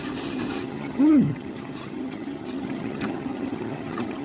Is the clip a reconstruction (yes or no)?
yes